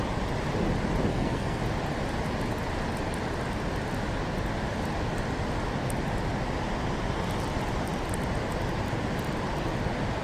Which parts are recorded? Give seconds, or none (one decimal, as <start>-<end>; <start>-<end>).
0.0-1.1; 1.6-10.2